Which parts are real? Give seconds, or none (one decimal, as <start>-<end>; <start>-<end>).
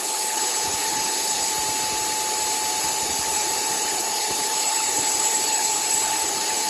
1.5-2.8